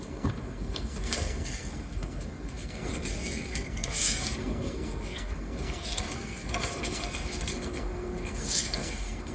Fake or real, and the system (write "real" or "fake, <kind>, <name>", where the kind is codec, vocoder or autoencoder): fake, codec, SNAC